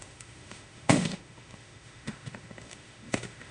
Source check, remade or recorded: remade